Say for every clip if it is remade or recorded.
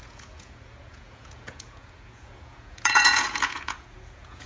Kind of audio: remade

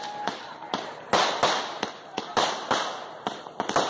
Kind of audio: recorded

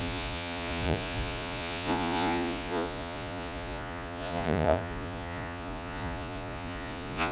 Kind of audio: remade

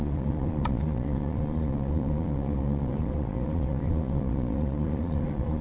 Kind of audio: remade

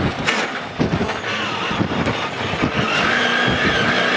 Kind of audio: recorded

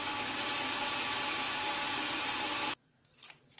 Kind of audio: recorded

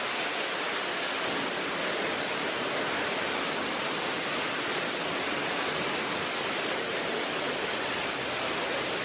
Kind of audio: recorded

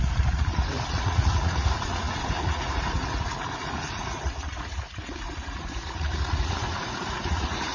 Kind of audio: remade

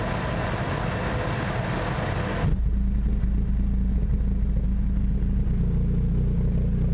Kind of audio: recorded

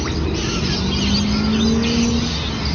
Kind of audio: recorded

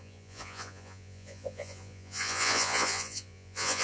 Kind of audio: remade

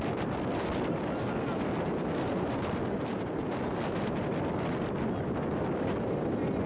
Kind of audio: recorded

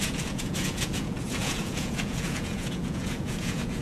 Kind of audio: remade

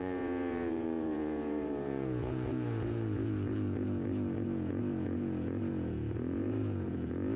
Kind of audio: remade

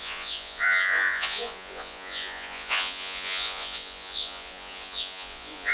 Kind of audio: remade